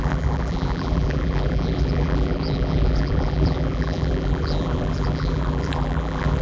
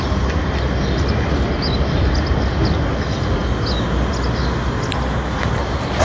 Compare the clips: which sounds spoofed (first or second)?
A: first